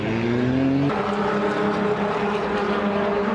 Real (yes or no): yes